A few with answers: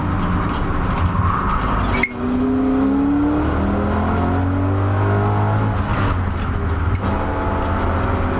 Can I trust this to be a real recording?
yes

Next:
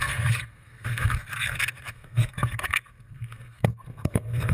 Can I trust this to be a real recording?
no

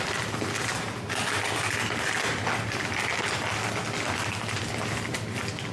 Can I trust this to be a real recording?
yes